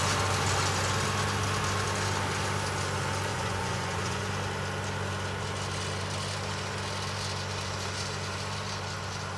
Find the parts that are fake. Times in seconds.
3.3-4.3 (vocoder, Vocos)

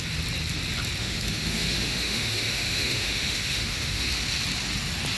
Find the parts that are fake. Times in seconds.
1.0-4.1 (autoencoder, DAC-VAE)

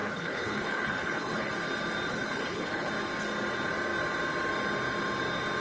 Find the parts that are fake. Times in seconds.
0.0-1.5 (codec, HILCodec); 2.1-2.9

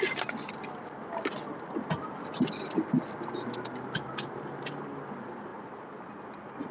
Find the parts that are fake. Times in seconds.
none

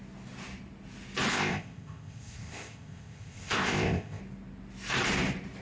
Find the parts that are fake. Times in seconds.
1.3-4.2 (codec, ZipCodec)

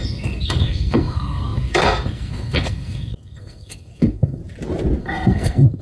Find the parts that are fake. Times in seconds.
0.0-4.4 (codec, SNAC); 5.0-5.8

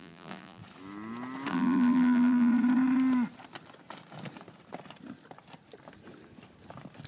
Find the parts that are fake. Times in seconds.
0.0-0.6 (vocoder, BigVGAN v2); 1.5-2.5

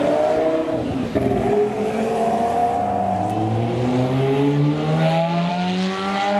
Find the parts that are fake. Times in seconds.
none